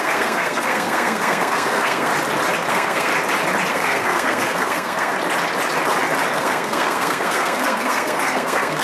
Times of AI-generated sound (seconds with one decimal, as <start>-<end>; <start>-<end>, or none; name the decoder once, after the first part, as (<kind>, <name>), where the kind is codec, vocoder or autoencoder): 0.0-2.1 (codec, SNAC); 2.7-3.1; 3.7-5.1; 6.3-8.8